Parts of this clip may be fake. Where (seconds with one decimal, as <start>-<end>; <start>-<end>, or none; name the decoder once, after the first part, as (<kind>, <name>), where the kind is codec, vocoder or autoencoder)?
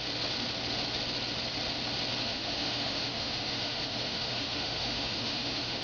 2.2-5.8 (autoencoder, DAC-VAE)